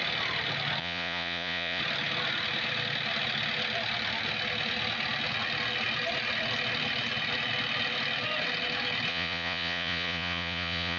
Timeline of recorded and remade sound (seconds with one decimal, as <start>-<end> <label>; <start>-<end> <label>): 0.0-0.8 recorded; 0.8-1.8 remade; 1.8-9.1 recorded; 9.1-11.0 remade